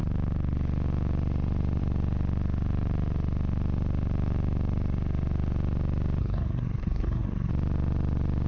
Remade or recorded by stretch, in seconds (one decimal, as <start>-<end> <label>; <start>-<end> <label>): 0.0-6.2 recorded; 6.2-7.5 remade; 7.5-8.5 recorded